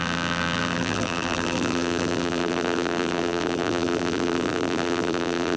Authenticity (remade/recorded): remade